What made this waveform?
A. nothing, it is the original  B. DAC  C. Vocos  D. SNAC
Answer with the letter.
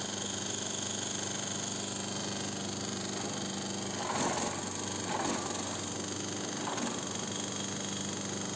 A